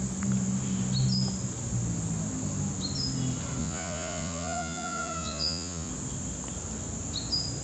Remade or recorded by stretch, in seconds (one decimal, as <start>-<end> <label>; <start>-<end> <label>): 0.0-3.6 recorded; 3.6-5.9 remade; 5.9-7.6 recorded